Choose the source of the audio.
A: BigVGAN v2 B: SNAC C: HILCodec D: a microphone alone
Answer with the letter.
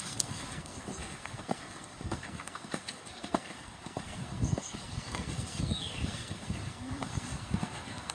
B